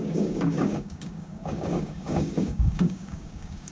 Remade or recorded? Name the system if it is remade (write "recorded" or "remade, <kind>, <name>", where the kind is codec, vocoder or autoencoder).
remade, codec, DAC